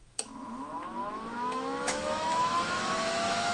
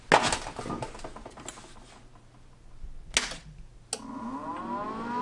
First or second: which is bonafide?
second